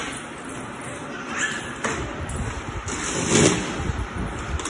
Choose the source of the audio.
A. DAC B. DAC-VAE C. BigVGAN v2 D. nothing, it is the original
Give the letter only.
D